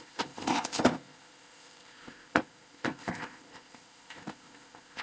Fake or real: fake